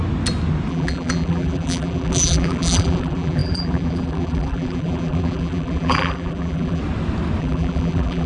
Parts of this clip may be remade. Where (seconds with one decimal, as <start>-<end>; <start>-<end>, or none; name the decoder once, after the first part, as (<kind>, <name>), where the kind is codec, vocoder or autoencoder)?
0.7-6.8 (vocoder, BigVGAN v2); 7.4-8.3